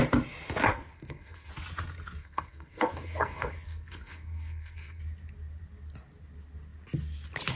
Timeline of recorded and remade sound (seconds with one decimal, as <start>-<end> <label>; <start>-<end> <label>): 0.0-0.7 recorded; 0.7-1.5 remade; 1.5-2.2 recorded; 2.2-5.0 remade; 5.0-7.6 recorded